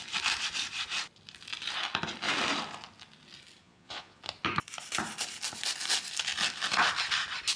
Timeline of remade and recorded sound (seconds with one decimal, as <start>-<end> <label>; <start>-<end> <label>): 0.0-3.6 recorded; 3.6-4.2 remade; 4.2-7.6 recorded